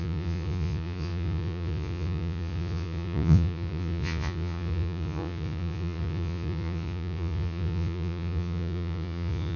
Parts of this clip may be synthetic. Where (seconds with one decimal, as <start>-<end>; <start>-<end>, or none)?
0.0-9.6